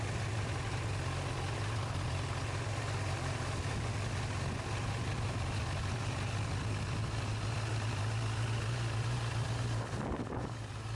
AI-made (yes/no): no